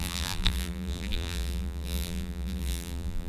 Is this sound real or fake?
fake